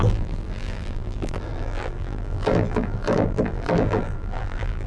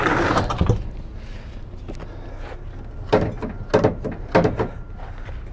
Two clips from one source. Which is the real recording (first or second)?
second